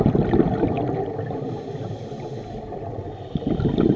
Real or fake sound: real